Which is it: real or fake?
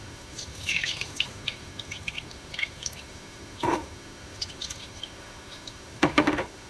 fake